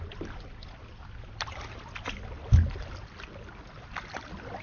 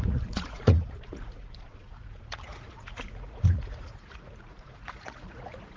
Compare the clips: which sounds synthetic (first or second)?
second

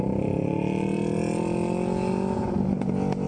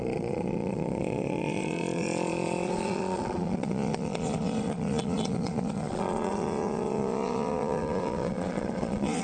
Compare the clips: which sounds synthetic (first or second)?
second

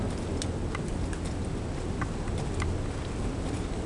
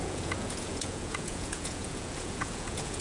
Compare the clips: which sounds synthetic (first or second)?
second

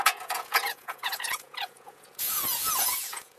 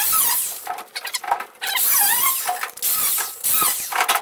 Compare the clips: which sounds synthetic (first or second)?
first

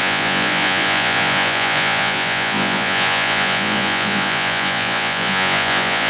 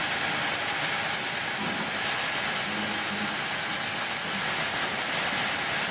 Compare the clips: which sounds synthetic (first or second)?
first